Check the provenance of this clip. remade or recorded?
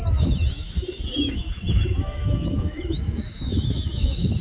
remade